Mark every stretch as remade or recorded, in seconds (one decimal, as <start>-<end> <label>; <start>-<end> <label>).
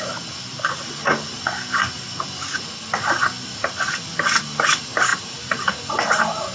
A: 0.0-6.5 recorded